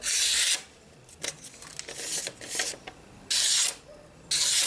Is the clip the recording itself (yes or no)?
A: yes